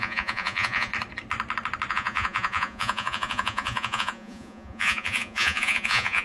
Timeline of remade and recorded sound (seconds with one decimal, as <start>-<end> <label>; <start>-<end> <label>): 0.0-0.9 remade; 0.9-1.9 recorded; 1.9-6.2 remade